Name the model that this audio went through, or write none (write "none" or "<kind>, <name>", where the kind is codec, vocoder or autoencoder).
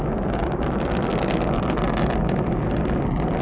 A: none